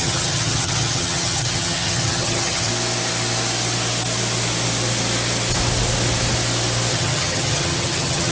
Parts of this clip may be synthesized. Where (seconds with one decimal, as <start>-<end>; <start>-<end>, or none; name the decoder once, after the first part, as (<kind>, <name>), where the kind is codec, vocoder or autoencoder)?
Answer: 0.0-2.7 (vocoder, HiFi-GAN); 6.9-8.3